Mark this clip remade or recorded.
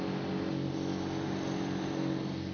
recorded